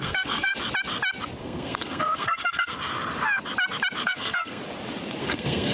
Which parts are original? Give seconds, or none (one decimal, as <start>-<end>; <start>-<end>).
0.5-1.4; 2.7-4.0; 4.6-5.2